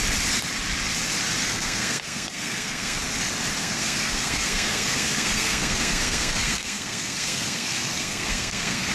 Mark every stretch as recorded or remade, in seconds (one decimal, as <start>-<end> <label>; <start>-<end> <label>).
0.0-1.4 recorded; 1.4-3.0 remade; 3.0-3.6 recorded; 3.6-8.9 remade

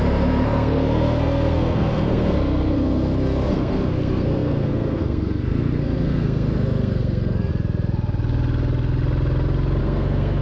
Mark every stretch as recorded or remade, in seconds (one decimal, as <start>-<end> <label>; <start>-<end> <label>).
0.0-7.5 remade; 7.5-9.8 recorded; 9.8-10.4 remade

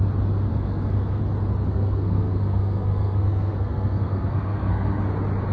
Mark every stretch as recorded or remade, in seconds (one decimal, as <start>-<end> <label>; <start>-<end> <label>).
0.0-0.5 recorded; 0.5-1.2 remade; 1.2-1.7 recorded; 1.7-5.0 remade; 5.0-5.5 recorded